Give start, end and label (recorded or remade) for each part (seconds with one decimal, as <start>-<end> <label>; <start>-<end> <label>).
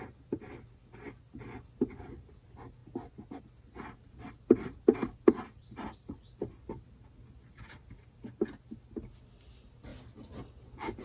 0.0-11.0 recorded